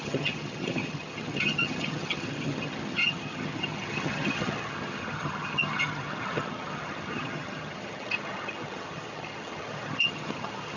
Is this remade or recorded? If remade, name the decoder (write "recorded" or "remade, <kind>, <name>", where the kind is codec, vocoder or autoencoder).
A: remade, vocoder, HiFi-GAN